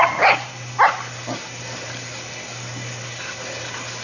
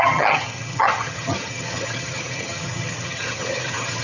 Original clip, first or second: first